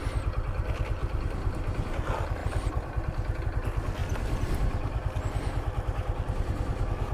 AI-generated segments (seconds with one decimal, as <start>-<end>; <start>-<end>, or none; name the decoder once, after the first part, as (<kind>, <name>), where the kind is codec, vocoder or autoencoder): 1.0-1.9 (vocoder, BigVGAN v2); 2.4-3.4; 4.0-5.2